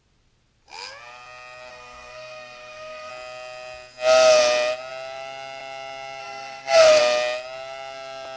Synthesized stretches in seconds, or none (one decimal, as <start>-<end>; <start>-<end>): 1.7-3.1; 6.2-7.0